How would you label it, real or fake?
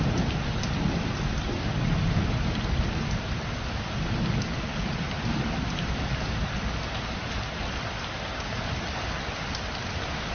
fake